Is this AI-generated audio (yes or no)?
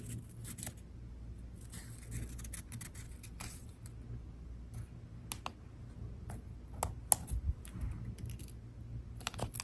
no